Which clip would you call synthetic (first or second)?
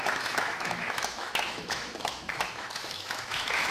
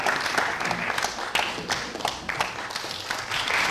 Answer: first